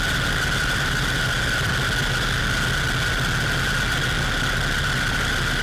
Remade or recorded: recorded